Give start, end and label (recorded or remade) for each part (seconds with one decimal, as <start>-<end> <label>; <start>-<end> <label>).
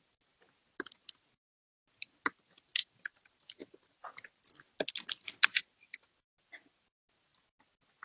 0.0-8.0 recorded